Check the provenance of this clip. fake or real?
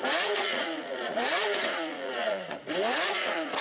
fake